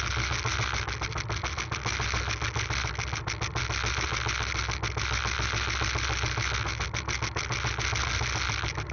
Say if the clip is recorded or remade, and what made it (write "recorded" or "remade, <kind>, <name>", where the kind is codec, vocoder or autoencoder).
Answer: recorded